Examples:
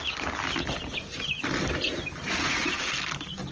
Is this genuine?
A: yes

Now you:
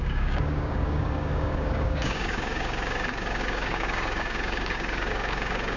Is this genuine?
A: no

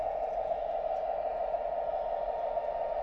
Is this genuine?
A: yes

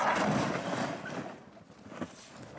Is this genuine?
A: yes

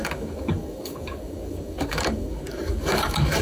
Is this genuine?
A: no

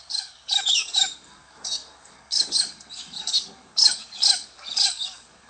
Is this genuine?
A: no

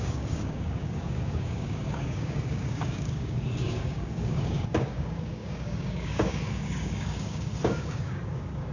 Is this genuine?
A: no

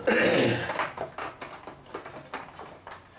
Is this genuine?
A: yes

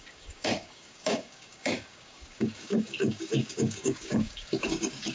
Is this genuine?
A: no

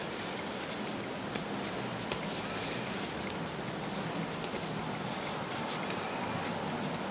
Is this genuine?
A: yes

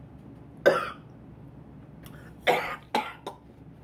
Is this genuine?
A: yes